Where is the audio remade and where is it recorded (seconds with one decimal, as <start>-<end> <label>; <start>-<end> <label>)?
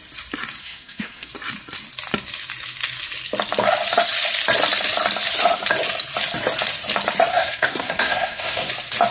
0.0-0.6 recorded; 0.6-1.3 remade; 1.3-7.3 recorded; 7.3-8.7 remade; 8.7-9.1 recorded